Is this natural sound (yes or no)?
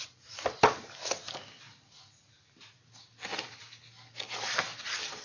yes